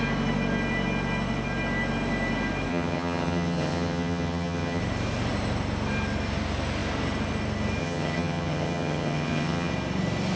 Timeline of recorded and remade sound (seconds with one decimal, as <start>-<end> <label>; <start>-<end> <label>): 0.0-2.7 recorded; 2.7-4.8 remade; 4.8-7.8 recorded; 7.8-9.7 remade; 9.7-10.4 recorded